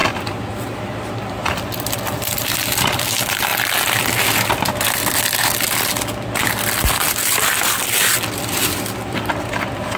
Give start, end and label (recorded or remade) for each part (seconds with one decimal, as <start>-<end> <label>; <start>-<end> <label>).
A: 0.0-3.5 remade; 3.5-6.1 recorded; 6.1-10.0 remade